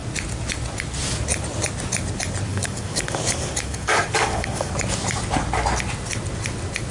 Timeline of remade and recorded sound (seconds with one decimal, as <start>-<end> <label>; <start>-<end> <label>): 0.0-2.5 recorded; 2.5-4.7 remade; 4.7-6.9 recorded